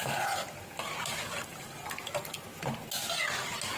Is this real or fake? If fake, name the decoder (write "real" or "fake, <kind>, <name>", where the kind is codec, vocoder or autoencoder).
real